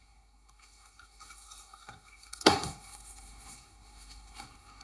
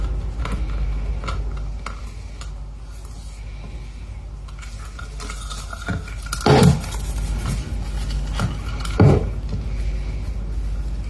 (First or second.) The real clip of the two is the second